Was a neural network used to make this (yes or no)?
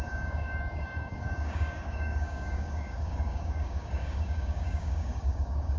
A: yes